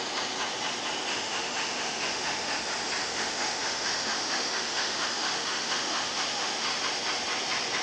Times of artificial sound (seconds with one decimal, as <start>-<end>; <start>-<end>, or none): 1.1-2.6; 3.0-6.8